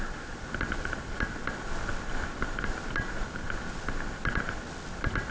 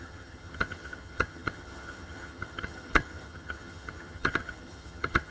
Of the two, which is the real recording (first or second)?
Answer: first